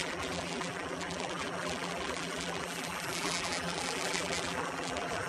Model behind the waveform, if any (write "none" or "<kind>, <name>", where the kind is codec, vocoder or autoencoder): vocoder, BigVGAN v2